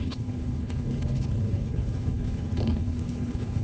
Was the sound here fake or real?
fake